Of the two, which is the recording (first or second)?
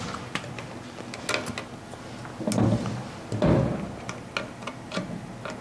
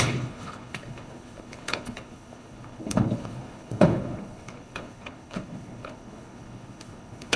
first